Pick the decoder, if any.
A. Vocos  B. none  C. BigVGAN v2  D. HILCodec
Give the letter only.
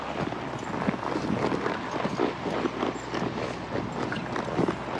B